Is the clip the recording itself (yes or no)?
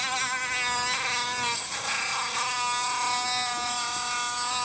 yes